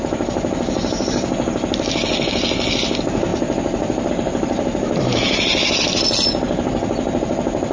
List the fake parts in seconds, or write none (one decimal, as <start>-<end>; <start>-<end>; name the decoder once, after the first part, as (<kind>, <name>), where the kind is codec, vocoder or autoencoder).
none